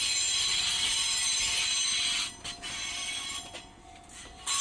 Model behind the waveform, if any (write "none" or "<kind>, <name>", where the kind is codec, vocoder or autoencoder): none